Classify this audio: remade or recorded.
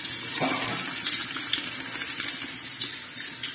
recorded